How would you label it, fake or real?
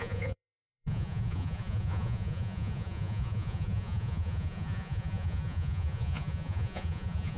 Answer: fake